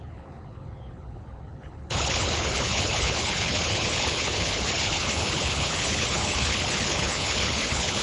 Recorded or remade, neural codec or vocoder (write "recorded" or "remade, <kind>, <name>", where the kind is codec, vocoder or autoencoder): remade, codec, HILCodec